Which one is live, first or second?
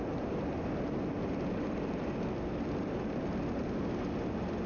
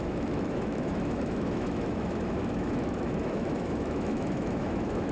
first